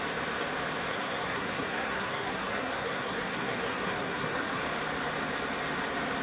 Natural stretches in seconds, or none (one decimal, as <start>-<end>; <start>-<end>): 0.0-0.9; 4.6-6.2